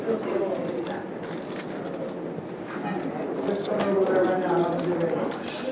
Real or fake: real